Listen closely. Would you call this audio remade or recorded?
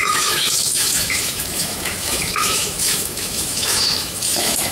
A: remade